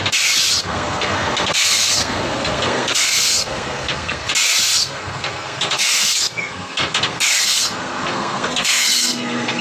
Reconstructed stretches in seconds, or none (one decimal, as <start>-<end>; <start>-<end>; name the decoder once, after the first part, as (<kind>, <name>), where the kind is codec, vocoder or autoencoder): 0.6-4.3 (codec, SNAC); 4.8-9.6